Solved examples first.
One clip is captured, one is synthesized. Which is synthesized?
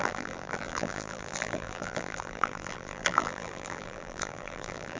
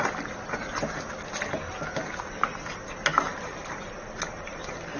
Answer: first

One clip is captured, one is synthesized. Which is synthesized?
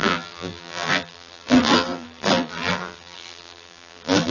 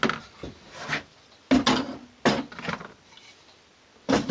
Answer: first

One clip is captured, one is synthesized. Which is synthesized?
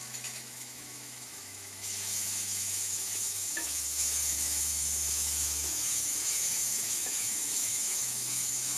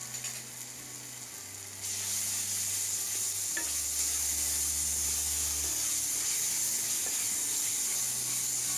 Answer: first